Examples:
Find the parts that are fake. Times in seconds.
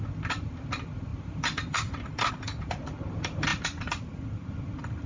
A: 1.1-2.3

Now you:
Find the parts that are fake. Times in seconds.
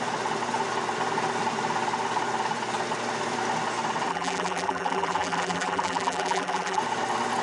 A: 4.1-6.8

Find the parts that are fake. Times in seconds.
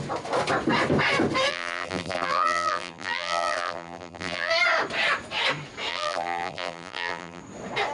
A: 1.5-4.5; 5.9-7.4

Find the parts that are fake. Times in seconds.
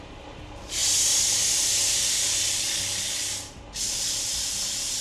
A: none